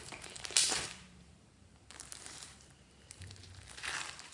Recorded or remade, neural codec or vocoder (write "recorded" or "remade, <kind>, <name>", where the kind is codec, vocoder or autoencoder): remade, vocoder, BigVGAN v2